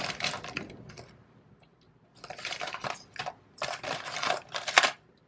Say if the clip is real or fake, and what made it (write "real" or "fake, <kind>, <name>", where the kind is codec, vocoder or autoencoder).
real